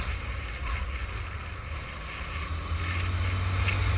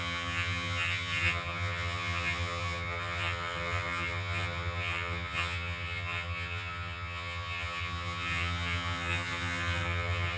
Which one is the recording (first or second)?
first